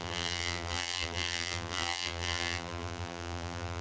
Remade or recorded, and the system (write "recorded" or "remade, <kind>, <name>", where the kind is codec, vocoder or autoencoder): remade, vocoder, BigVGAN v2